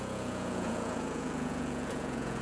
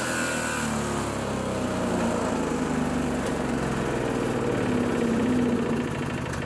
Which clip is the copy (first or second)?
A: first